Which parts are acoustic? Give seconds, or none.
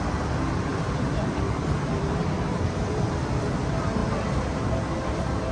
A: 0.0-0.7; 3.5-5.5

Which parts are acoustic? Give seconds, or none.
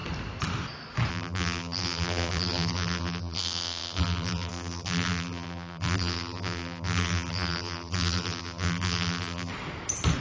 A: 0.0-1.1; 9.5-10.2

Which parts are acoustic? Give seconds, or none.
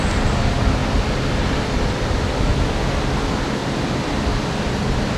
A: 0.0-3.6; 4.1-5.2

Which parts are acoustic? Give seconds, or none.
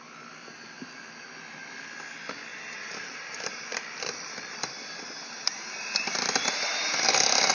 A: 0.0-2.5; 7.0-7.5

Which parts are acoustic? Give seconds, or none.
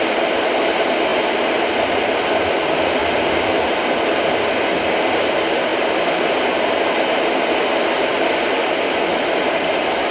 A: 0.0-5.7; 6.9-8.1; 8.6-10.1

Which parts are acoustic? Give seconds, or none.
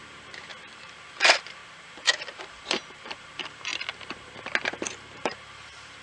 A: 3.7-4.9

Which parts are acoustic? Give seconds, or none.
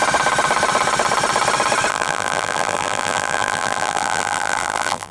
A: 0.0-1.9